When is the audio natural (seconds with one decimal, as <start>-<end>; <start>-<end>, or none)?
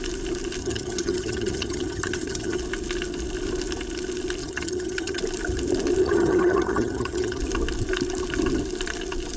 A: 0.0-0.6; 2.6-4.4; 5.2-6.0; 7.4-9.4